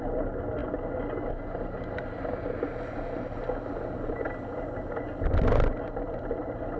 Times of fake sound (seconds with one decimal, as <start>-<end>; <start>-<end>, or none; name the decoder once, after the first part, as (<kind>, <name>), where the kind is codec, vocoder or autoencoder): none